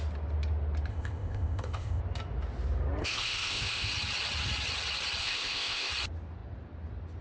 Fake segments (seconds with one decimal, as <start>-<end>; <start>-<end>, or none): 0.9-2.0; 3.0-3.9; 5.2-5.9